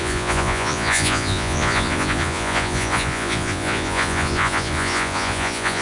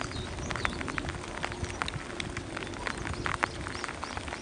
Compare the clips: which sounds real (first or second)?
second